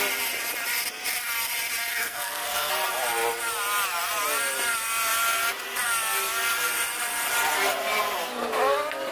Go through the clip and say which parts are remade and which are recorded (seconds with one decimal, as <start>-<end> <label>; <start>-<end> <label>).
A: 0.0-1.9 recorded; 1.9-2.7 remade; 2.7-9.1 recorded